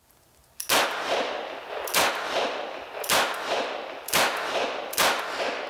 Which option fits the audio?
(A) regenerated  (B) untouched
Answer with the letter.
B